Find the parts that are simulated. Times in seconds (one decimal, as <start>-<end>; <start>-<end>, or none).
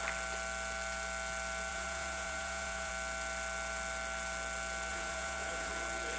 1.7-2.9; 4.9-5.7